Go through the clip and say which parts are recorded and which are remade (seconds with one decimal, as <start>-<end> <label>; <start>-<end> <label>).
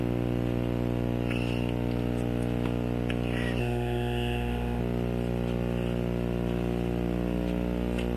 0.0-3.6 recorded; 3.6-4.8 remade; 4.8-8.2 recorded